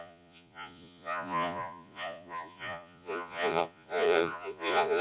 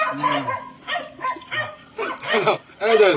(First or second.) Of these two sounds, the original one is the second